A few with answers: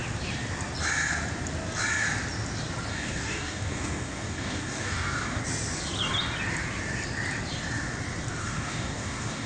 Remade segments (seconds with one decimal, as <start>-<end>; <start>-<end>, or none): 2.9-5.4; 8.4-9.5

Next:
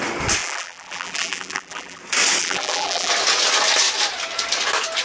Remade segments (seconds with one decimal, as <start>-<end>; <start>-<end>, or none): 0.4-2.0; 2.4-3.1

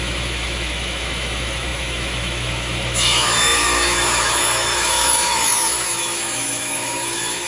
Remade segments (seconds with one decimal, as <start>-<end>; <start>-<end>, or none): 0.0-7.5

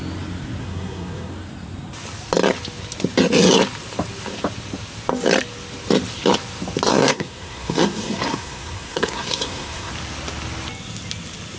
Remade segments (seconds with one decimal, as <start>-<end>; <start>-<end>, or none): 0.6-1.3; 6.9-9.9

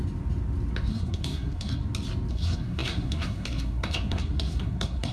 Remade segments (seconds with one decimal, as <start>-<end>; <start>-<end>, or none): 0.9-1.8; 2.3-5.1

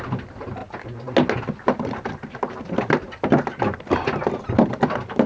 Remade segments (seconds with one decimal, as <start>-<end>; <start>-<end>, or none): none

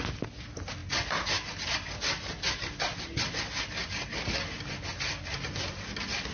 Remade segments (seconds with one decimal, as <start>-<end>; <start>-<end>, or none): none

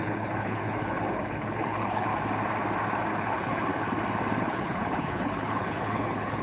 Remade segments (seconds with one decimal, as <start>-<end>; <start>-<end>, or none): 0.0-2.1; 3.1-3.7; 4.4-6.4